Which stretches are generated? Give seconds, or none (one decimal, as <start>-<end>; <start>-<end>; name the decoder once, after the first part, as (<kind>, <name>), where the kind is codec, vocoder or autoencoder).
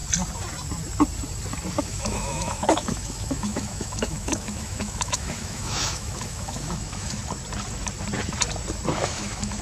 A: 1.8-7.2 (autoencoder, DAC-VAE); 9.0-9.6